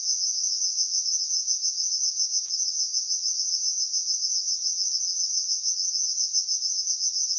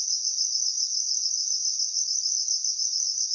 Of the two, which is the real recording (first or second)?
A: second